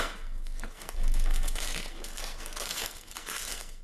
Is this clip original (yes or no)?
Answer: no